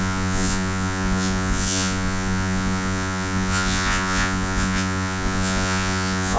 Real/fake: fake